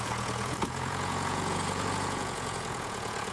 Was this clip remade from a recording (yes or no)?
yes